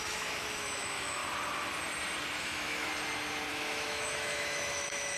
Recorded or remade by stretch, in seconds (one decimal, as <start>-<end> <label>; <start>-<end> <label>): 0.0-1.2 remade; 1.2-2.4 recorded; 2.4-2.9 remade; 2.9-3.5 recorded; 3.5-5.2 remade